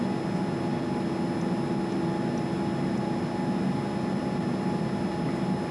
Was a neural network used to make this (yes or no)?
no